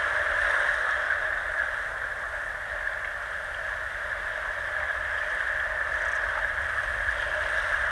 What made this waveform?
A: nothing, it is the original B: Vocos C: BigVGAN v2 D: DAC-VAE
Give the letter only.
A